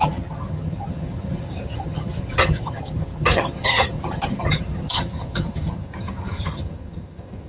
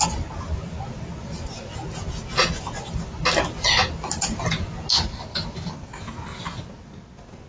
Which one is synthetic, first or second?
first